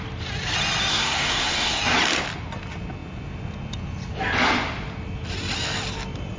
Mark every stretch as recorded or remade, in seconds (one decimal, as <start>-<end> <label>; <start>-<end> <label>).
0.0-0.9 recorded; 0.9-1.8 remade; 1.8-6.4 recorded